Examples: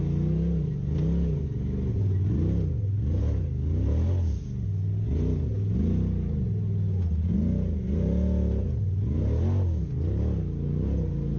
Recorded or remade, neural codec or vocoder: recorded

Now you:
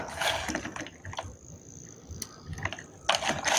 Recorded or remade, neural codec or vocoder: recorded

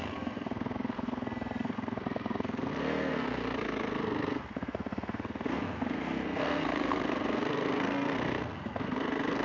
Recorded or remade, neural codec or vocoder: remade, codec, SNAC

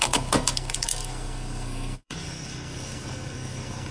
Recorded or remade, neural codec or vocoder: remade, codec, SNAC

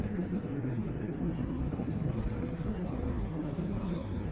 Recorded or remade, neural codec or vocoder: remade, codec, SNAC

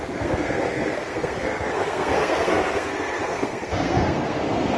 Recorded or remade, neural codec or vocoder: remade, codec, SNAC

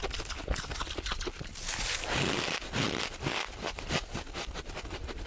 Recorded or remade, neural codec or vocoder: recorded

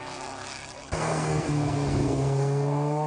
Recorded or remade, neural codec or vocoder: remade, codec, SNAC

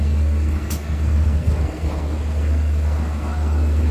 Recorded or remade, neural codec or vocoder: remade, codec, SNAC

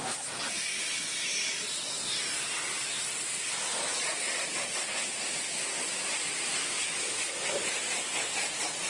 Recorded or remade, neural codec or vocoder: recorded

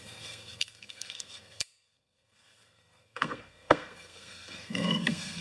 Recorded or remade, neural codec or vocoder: remade, codec, SNAC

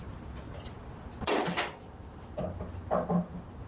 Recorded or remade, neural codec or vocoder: recorded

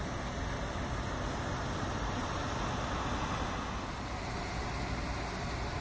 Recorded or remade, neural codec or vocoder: recorded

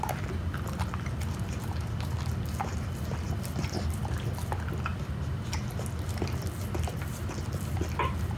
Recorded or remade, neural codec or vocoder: recorded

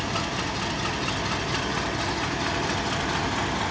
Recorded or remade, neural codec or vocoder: recorded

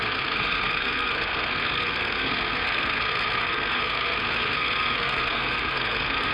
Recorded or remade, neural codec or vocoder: remade, codec, SNAC